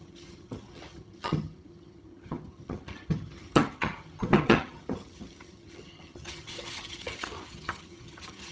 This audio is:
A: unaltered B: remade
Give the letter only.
B